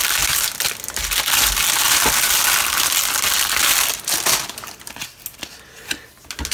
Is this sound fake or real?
real